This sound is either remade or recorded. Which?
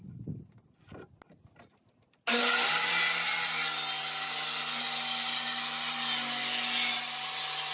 recorded